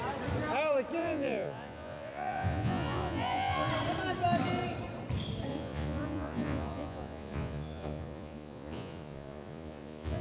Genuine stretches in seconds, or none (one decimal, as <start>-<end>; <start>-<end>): 0.0-1.0; 3.7-5.5